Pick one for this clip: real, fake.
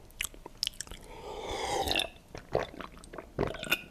real